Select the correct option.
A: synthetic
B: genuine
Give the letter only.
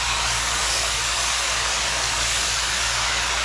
A